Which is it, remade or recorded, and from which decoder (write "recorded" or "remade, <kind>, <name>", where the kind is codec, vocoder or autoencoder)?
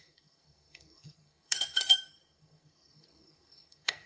remade, codec, SNAC